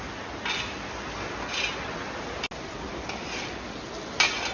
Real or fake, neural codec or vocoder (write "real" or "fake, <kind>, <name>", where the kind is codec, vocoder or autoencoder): real